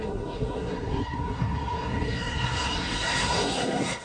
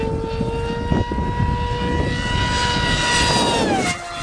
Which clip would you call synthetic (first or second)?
first